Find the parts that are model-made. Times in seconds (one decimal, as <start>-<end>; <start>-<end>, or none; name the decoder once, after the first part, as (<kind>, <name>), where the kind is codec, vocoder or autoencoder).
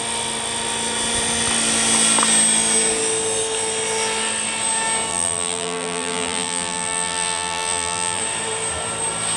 5.1-8.2 (vocoder, BigVGAN v2)